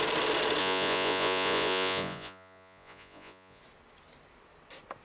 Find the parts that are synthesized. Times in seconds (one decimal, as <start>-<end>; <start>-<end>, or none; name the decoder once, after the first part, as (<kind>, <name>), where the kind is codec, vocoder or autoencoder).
0.6-3.6 (vocoder, Vocos)